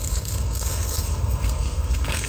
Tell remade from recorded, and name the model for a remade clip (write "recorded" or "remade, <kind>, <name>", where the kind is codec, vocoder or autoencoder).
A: remade, codec, SNAC